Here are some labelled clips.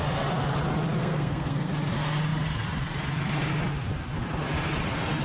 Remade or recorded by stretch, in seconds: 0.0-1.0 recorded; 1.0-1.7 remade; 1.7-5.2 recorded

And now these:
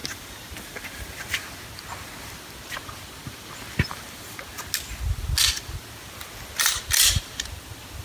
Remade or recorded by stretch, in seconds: 0.0-8.0 recorded

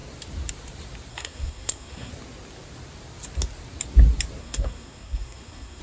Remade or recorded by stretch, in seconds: 0.0-1.1 recorded; 1.1-2.1 remade; 2.1-4.4 recorded; 4.4-5.8 remade

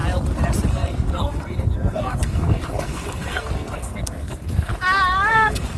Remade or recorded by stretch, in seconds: 0.0-0.7 recorded; 0.7-4.7 remade; 4.7-5.3 recorded; 5.3-5.8 remade

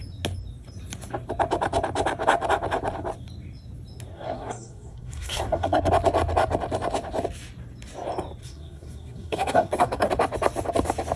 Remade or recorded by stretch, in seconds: 0.0-4.1 recorded; 4.1-5.9 remade; 5.9-8.4 recorded; 8.4-10.1 remade; 10.1-11.2 recorded